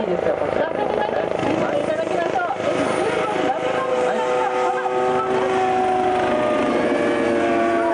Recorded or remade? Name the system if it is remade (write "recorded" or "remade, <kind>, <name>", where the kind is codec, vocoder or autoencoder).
recorded